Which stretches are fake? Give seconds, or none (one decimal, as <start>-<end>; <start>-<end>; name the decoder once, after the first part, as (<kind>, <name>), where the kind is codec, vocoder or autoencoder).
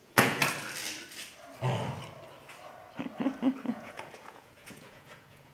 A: 0.0-0.4 (vocoder, Vocos); 3.7-5.5